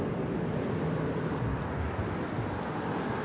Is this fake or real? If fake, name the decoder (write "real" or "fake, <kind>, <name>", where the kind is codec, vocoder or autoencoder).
real